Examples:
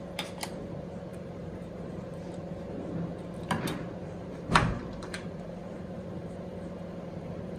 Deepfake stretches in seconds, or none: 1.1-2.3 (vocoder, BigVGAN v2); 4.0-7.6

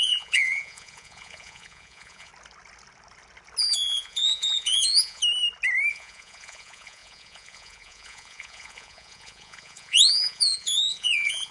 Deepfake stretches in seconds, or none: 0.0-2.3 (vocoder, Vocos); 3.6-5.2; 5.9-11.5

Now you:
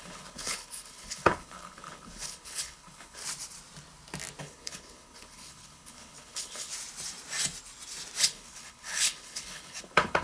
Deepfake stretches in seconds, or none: 0.0-3.2 (codec, HILCodec); 4.4-6.7; 8.2-10.2

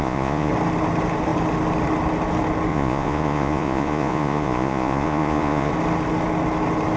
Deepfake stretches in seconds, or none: 0.0-0.5 (vocoder, Vocos); 2.7-5.7